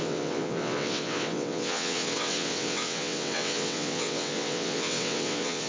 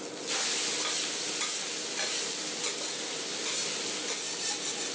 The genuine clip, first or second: second